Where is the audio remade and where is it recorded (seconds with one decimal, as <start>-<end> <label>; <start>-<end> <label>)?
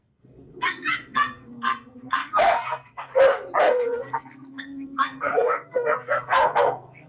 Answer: 0.0-3.1 remade; 3.1-3.6 recorded; 3.6-7.1 remade